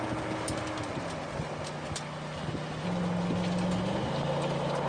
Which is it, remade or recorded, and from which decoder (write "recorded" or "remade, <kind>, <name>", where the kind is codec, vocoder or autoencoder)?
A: recorded